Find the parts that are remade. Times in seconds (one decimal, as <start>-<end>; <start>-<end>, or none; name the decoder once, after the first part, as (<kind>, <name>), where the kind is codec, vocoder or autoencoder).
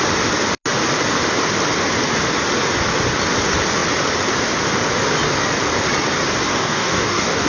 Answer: 6.5-7.5 (codec, DAC)